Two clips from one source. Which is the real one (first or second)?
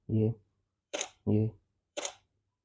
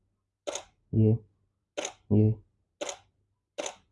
second